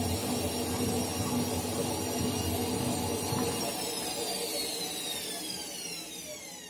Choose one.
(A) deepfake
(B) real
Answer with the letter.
B